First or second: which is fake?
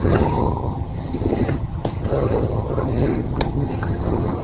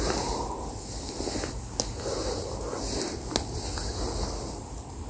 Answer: first